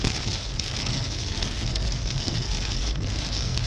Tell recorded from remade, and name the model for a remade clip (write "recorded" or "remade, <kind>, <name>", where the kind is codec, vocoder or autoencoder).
remade, codec, SNAC